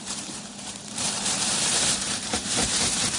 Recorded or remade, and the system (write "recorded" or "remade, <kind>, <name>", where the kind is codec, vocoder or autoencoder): remade, vocoder, BigVGAN v2